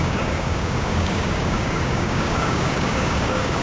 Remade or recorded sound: remade